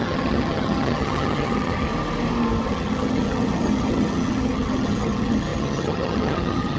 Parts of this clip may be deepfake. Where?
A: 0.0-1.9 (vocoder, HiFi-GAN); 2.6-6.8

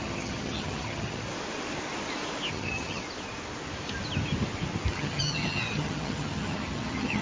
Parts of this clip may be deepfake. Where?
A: 0.0-1.3 (vocoder, HiFi-GAN); 2.5-3.0; 4.9-7.2

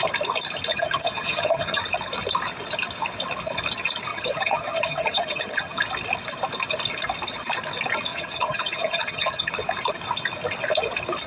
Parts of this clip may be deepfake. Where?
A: 0.7-1.8 (vocoder, HiFi-GAN); 4.1-5.8; 8.1-9.5

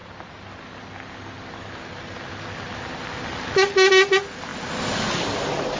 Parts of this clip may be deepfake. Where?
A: none

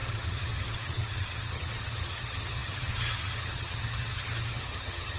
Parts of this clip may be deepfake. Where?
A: 0.0-5.2 (vocoder, HiFi-GAN)